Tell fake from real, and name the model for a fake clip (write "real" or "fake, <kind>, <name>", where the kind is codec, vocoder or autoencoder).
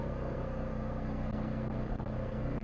fake, codec, SNAC